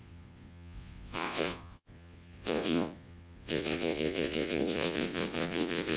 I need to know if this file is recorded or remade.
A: remade